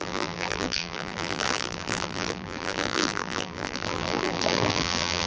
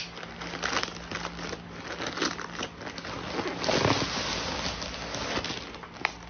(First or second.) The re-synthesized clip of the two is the first